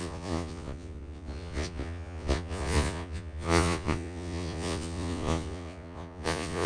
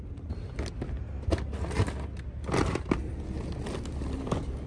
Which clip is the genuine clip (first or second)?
second